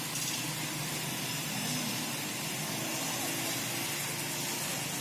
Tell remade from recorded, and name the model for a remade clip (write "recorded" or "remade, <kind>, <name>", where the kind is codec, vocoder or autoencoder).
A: recorded